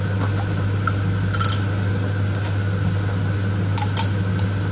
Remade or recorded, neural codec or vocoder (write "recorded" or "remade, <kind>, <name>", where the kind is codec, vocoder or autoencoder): recorded